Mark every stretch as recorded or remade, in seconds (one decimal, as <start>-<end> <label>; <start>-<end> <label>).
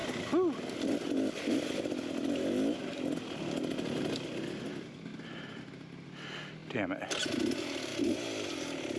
0.0-9.0 recorded